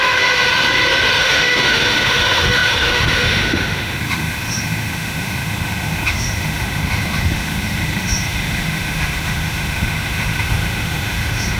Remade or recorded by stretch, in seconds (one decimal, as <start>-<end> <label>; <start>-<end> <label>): 0.0-0.5 remade; 0.5-1.2 recorded; 1.2-11.6 remade